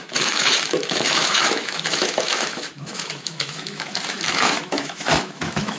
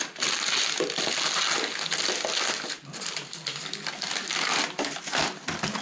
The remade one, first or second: first